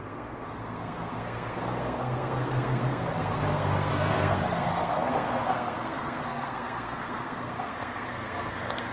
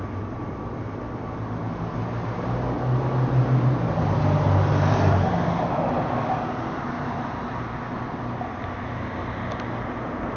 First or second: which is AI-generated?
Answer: first